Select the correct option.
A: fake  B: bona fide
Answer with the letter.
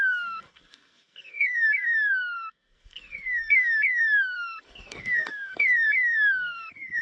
A